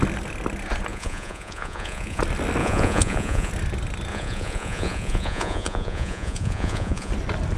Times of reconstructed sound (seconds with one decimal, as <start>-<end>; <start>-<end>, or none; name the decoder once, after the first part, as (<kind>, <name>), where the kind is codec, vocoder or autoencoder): 0.9-2.2 (vocoder, Vocos); 2.6-3.5; 4.1-7.1